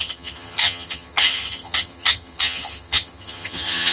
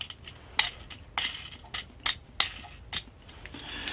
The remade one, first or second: first